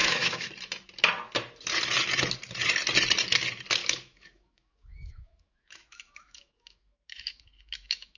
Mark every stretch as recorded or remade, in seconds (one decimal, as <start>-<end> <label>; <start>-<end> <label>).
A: 0.0-0.5 remade; 0.5-3.8 recorded; 3.8-8.2 remade